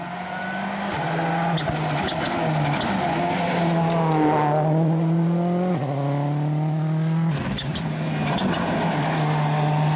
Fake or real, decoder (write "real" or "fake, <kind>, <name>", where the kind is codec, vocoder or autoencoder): real